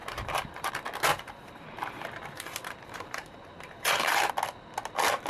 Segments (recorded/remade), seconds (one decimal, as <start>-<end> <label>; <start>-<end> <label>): 0.0-0.7 remade; 0.7-1.1 recorded; 1.1-4.3 remade; 4.3-5.3 recorded